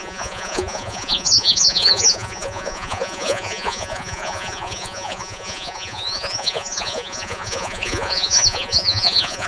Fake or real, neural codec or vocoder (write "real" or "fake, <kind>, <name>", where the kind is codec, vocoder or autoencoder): fake, vocoder, Vocos